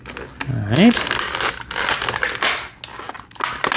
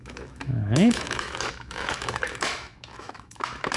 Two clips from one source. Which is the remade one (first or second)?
second